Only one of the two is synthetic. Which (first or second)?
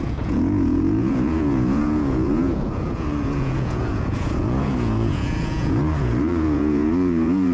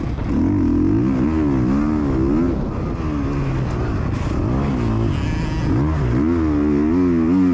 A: first